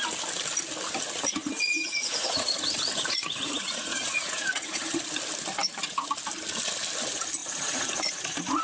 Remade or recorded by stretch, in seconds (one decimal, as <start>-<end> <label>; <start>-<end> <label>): 0.0-1.2 recorded; 1.2-5.0 remade; 5.0-7.4 recorded; 7.4-8.6 remade